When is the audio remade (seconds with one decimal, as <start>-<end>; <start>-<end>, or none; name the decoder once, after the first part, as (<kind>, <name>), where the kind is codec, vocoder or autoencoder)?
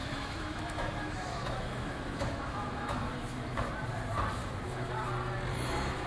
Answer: 0.0-3.7 (autoencoder, DAC-VAE); 4.4-4.9; 5.5-6.1